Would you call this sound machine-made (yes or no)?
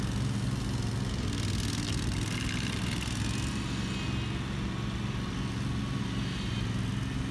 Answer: no